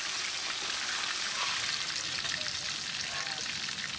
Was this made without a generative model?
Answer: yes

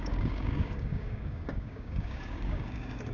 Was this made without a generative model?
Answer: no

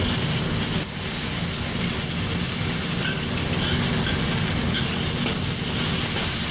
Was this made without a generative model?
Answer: yes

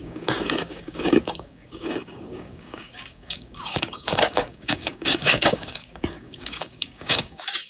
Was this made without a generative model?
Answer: no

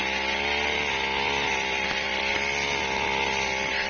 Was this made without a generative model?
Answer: yes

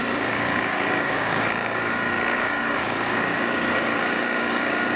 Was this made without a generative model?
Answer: no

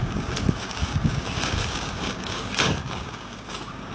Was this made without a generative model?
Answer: no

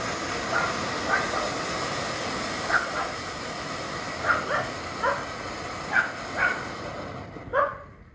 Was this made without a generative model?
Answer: yes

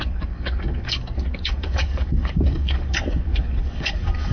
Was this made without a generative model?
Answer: no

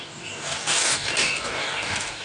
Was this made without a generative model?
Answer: no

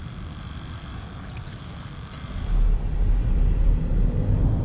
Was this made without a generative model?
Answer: yes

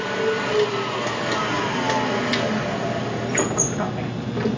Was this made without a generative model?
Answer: yes